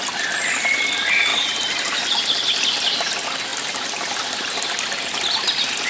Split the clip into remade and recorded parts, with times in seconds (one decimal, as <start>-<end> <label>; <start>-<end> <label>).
0.0-1.3 recorded; 1.3-2.0 remade; 2.0-5.9 recorded